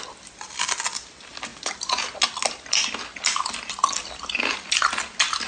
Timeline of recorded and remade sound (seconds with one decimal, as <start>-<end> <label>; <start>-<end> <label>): 0.0-5.5 recorded